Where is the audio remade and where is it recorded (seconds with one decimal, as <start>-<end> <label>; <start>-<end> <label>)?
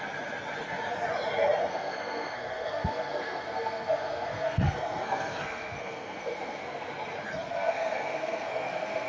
0.0-1.7 recorded; 1.7-6.9 remade; 6.9-7.5 recorded; 7.5-9.1 remade